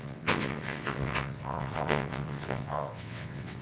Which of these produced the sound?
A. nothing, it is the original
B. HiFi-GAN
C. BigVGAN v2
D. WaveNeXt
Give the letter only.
D